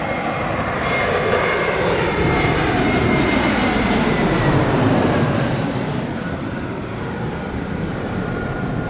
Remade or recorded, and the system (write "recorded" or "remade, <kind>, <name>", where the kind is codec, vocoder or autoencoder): remade, vocoder, BigVGAN v2